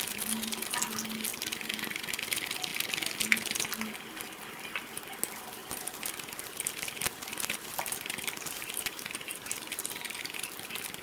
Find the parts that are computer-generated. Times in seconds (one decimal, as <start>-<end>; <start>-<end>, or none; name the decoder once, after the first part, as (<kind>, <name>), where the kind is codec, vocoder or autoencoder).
1.3-2.1 (vocoder, BigVGAN v2); 5.6-11.0